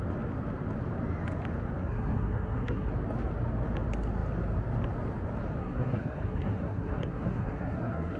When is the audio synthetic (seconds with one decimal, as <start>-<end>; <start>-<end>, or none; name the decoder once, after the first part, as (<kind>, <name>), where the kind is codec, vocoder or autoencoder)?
1.8-2.9 (codec, SNAC); 5.6-8.2